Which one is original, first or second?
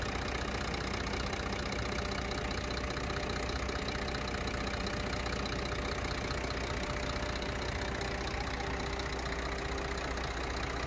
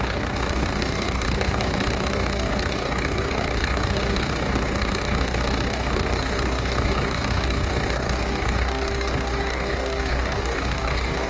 first